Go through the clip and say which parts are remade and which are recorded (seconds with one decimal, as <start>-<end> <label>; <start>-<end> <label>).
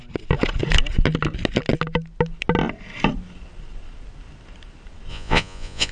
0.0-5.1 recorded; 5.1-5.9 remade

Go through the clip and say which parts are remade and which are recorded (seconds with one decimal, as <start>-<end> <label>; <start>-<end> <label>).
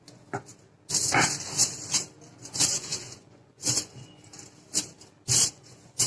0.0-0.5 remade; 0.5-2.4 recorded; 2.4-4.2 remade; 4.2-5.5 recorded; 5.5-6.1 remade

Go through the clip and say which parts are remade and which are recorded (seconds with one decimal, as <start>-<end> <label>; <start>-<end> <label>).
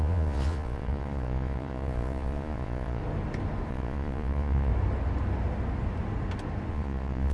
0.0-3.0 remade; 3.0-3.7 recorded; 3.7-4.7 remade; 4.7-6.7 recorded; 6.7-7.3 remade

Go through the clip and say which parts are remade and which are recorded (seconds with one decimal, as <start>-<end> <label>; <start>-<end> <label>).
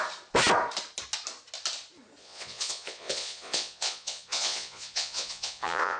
0.0-2.2 recorded; 2.2-6.0 remade